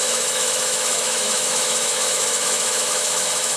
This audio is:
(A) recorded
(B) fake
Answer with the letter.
B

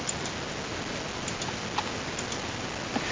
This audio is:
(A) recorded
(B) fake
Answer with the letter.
A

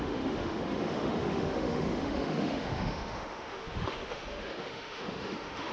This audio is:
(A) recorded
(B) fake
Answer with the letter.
B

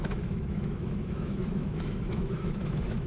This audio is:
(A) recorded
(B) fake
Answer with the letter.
B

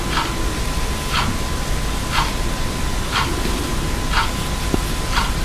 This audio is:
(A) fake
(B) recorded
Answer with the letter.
B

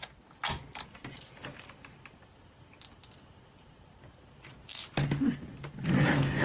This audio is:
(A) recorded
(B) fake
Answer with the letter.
A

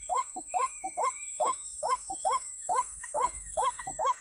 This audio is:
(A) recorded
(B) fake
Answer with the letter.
B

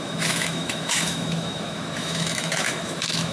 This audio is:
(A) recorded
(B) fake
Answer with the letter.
B